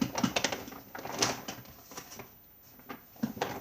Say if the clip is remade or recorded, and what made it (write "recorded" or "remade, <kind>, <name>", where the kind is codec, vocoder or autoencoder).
recorded